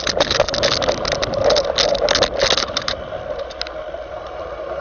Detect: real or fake real